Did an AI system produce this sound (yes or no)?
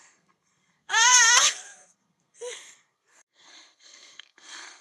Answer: yes